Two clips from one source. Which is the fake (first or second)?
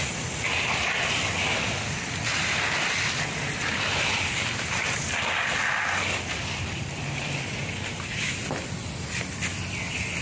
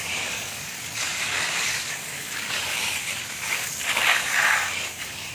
second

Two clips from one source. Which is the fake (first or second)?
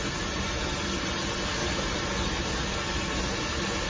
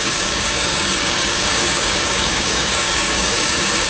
second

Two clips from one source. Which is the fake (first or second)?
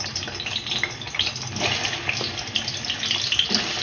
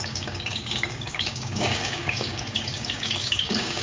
second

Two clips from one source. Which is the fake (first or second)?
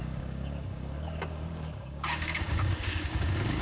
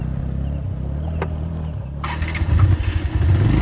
first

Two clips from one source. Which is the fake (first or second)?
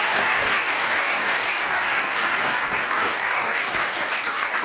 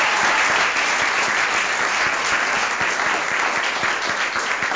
first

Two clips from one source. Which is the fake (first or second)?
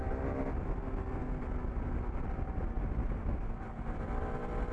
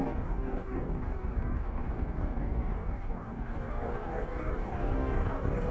second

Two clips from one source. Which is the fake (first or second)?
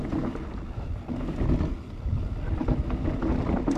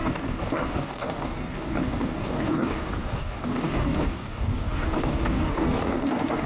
second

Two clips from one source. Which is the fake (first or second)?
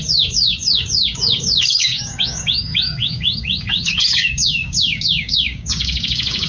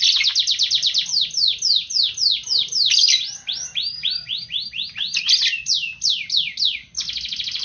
first